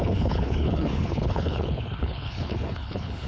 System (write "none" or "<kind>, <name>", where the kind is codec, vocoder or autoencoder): codec, HILCodec